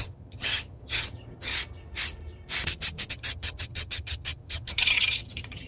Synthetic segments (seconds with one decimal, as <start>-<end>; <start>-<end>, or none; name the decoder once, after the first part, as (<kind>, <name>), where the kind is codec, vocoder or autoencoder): 0.0-1.5 (vocoder, HiFi-GAN); 3.1-5.7